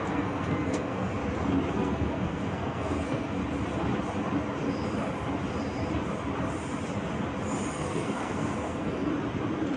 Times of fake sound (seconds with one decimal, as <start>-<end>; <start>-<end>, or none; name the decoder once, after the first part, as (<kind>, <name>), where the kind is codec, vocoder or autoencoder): 0.0-1.2 (codec, SNAC); 1.7-3.4; 7.7-9.1